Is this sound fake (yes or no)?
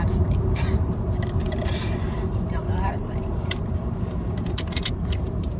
yes